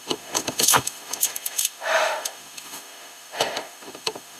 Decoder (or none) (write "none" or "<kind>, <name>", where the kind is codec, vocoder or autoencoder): autoencoder, DAC-VAE